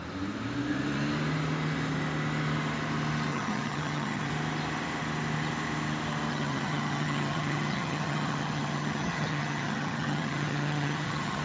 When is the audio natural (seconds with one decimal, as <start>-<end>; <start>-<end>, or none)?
0.0-3.3; 4.3-6.3